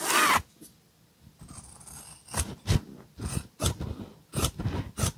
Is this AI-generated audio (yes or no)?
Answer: no